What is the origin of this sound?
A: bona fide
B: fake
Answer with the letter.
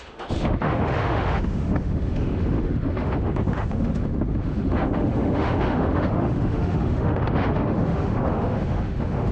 B